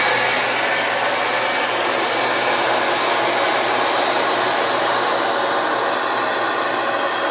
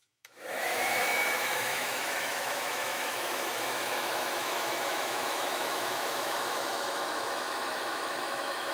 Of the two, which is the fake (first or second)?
second